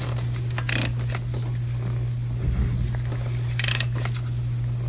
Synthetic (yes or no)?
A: no